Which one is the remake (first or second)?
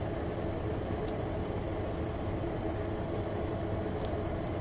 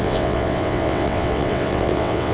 second